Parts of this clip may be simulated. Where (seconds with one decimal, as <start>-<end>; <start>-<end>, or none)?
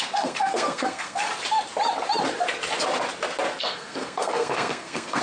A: 0.0-1.3; 3.6-5.2